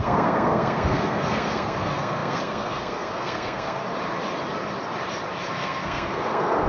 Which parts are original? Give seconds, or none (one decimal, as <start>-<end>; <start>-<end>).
3.8-5.5